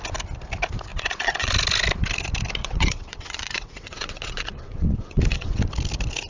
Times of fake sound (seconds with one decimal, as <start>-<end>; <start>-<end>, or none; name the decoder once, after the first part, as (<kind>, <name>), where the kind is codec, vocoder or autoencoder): 0.9-1.5 (vocoder, WaveNeXt); 2.6-5.6